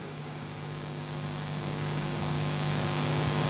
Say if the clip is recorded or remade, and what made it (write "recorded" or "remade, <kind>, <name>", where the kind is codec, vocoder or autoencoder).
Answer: remade, codec, DAC